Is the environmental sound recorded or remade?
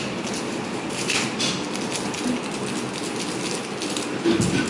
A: recorded